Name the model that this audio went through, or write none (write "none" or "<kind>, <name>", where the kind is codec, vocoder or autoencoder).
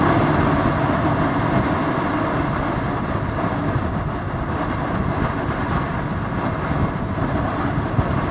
none